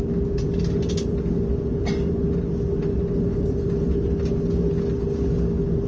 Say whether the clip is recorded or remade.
recorded